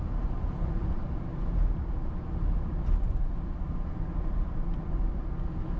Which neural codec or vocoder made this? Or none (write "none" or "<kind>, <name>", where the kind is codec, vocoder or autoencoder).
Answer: none